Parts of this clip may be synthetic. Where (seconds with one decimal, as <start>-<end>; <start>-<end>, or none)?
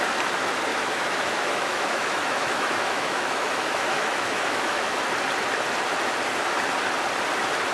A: 0.7-5.0